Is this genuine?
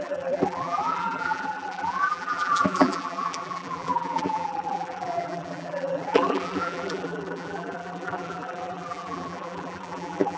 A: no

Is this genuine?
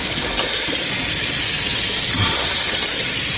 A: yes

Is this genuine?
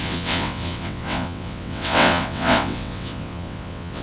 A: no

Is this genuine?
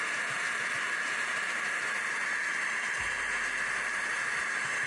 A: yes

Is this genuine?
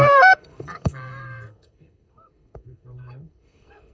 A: no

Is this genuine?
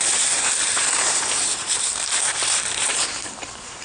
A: no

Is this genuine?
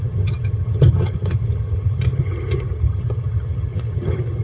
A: no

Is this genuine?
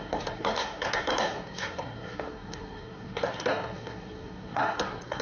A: no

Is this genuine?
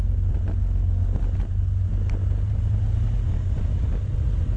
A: yes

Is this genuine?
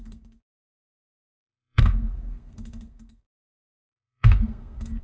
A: no